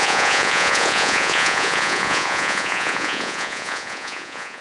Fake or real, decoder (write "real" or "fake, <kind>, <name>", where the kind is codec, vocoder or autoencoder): fake, vocoder, Vocos